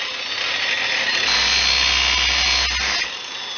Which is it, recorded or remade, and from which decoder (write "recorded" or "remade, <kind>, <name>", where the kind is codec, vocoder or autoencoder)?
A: recorded